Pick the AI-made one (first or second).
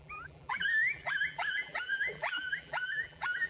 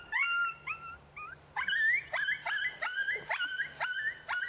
first